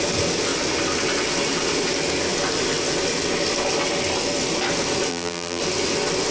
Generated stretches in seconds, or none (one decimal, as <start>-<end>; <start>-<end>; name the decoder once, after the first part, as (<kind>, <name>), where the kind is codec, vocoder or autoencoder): 5.1-5.6 (vocoder, BigVGAN v2)